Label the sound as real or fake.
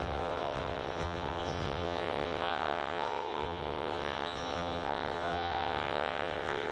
fake